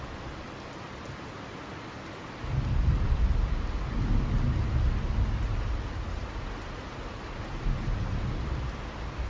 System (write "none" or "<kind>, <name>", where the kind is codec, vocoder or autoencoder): none